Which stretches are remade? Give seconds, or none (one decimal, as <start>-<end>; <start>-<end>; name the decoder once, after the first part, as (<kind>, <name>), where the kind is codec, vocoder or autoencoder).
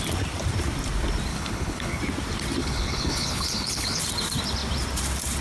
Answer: 1.3-2.0 (codec, HILCodec); 2.6-4.0